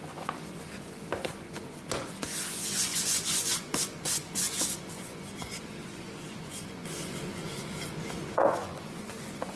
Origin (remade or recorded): remade